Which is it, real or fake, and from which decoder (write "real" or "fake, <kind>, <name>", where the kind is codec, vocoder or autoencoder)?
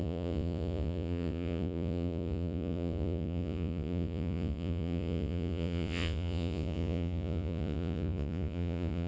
fake, vocoder, Vocos